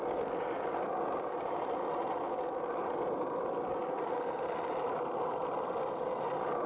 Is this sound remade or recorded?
recorded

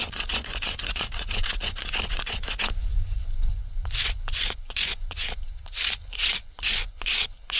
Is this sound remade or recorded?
remade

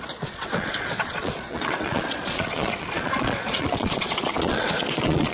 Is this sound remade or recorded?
remade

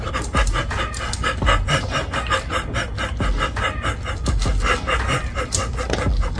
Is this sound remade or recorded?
recorded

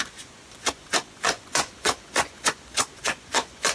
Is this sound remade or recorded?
remade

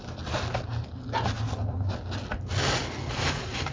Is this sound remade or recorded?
recorded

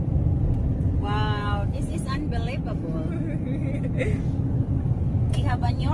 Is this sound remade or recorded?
recorded